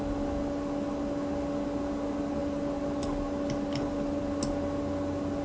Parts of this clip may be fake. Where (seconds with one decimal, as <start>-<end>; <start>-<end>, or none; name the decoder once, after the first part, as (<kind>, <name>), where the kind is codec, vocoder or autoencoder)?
none